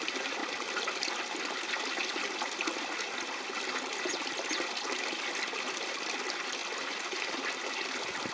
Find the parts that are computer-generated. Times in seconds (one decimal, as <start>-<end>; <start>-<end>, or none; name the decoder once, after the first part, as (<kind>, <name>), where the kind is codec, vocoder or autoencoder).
none